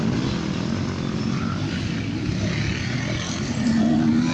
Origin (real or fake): real